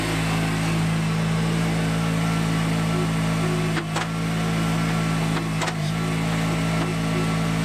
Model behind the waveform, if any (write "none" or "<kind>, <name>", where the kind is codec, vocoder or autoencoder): none